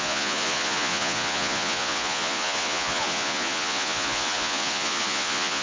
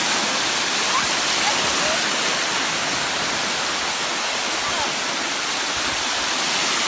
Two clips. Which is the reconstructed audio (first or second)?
first